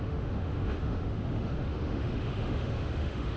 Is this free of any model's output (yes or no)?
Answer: no